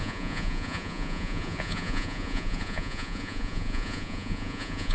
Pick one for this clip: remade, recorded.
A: remade